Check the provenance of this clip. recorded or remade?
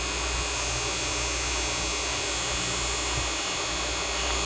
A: recorded